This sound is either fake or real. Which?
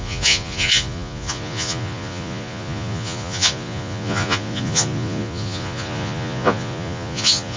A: fake